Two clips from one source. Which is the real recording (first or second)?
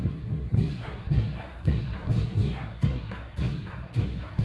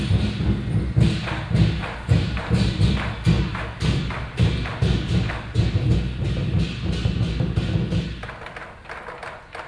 second